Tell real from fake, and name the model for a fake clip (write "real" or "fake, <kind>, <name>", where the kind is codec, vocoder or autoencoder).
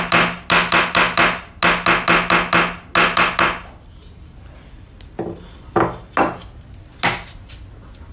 real